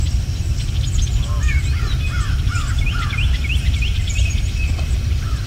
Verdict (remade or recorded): recorded